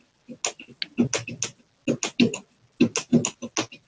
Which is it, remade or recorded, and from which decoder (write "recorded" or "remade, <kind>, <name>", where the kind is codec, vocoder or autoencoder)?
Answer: recorded